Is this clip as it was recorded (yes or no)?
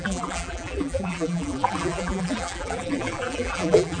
no